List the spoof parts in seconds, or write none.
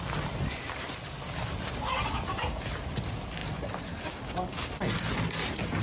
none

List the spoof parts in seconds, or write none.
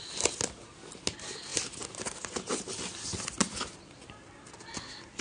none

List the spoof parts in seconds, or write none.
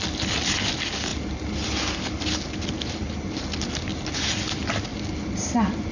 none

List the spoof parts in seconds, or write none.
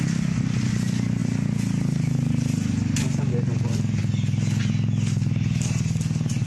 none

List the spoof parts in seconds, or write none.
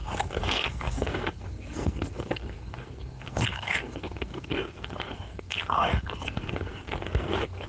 0.0-7.7 (codec, SNAC)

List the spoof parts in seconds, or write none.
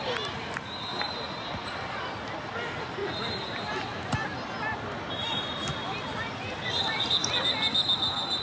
5.7-7.3 (vocoder, BigVGAN v2)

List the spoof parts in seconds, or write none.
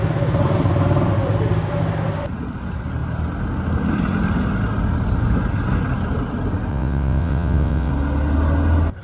6.7-7.9 (vocoder, WaveNeXt)